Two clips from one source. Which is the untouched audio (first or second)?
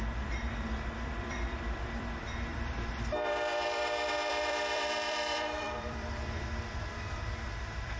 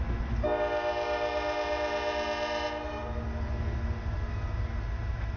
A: second